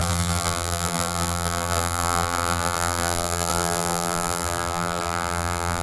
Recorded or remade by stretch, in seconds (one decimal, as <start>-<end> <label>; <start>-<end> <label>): 0.0-5.8 remade